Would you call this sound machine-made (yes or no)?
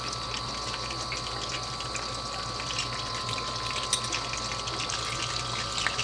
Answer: no